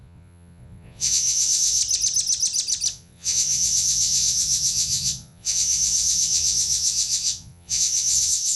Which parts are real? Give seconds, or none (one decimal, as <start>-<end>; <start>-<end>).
1.8-2.9